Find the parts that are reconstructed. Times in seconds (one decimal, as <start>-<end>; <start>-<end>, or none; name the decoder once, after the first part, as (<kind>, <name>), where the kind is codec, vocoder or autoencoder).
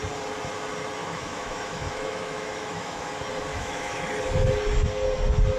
1.0-3.1 (autoencoder, DAC-VAE); 3.5-4.1